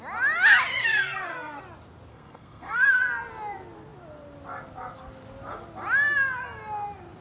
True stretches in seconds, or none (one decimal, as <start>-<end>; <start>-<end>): 0.0-0.8; 1.6-2.1; 3.0-7.2